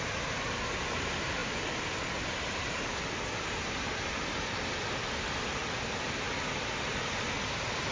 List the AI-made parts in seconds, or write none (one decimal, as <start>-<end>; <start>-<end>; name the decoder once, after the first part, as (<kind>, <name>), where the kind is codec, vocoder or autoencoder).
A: 5.6-6.6 (vocoder, BigVGAN v2)